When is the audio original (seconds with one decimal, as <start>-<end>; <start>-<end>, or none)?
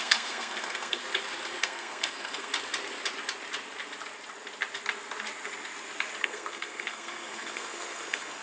1.0-1.6; 2.5-6.2